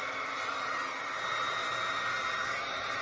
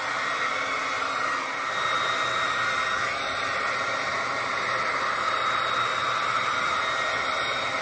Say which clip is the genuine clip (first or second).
first